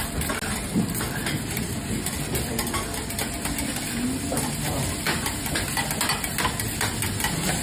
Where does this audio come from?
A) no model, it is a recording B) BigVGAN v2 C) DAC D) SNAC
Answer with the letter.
A